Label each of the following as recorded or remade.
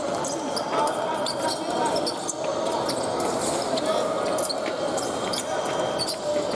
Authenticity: recorded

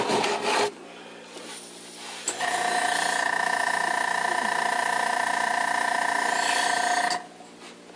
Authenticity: recorded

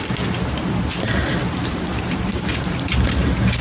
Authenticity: recorded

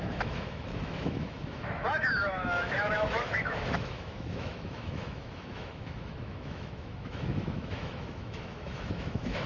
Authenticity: remade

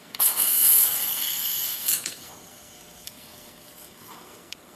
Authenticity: remade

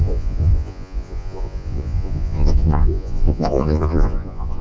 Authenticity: remade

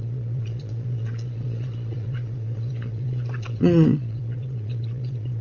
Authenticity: remade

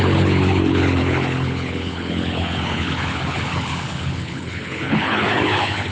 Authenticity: remade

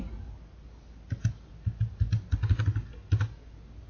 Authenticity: recorded